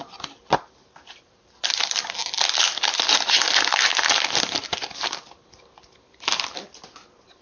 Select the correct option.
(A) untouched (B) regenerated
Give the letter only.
A